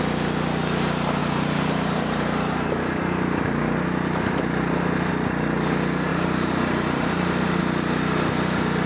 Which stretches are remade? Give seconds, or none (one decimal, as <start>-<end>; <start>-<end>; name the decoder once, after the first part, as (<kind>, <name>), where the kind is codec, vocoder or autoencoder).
1.2-5.1 (vocoder, BigVGAN v2); 6.1-7.6